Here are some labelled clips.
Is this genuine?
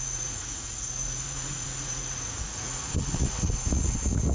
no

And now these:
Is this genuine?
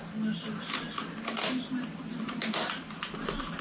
yes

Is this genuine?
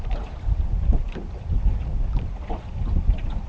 yes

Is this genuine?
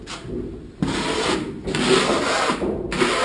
yes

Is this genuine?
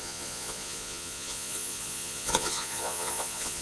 no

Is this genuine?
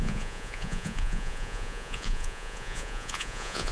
no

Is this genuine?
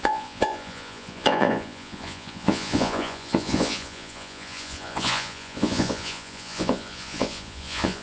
no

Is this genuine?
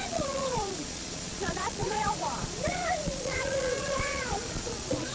no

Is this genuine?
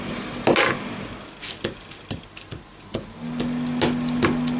yes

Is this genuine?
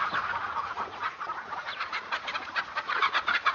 no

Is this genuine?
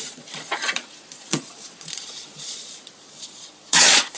no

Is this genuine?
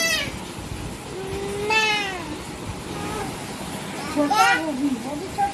yes